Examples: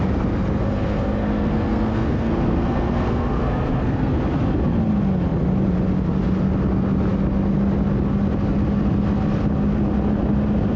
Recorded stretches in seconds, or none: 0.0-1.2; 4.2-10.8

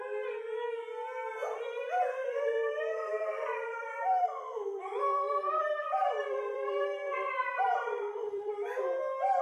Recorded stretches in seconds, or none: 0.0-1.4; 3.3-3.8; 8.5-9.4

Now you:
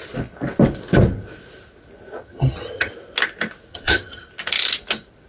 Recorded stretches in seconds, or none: 0.0-2.2; 2.9-3.7; 4.2-5.3

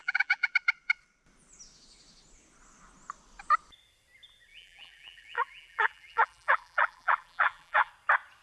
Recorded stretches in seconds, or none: 0.5-4.5; 7.9-8.4

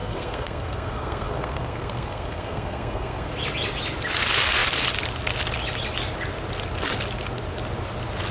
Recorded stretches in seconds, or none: 3.3-8.3

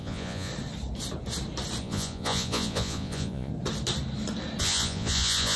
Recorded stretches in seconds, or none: 0.5-1.8; 3.5-4.6

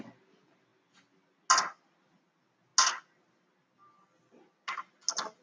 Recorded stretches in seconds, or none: 0.0-5.4

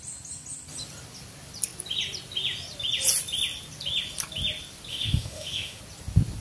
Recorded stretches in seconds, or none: 0.0-4.9; 5.8-6.4